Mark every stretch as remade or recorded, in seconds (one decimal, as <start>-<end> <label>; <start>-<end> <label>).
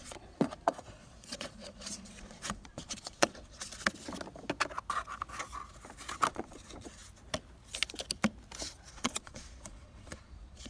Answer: 0.0-3.7 remade; 3.7-6.3 recorded; 6.3-7.0 remade; 7.0-8.9 recorded; 8.9-10.7 remade